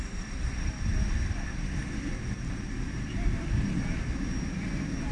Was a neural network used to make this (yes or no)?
no